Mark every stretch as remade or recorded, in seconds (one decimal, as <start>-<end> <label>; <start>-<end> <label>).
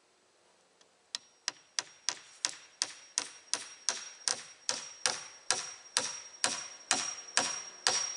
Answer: 0.0-8.2 recorded